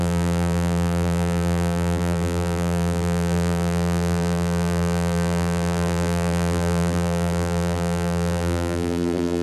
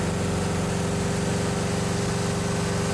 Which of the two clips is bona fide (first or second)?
second